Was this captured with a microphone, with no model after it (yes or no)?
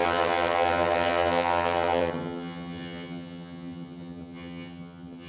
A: no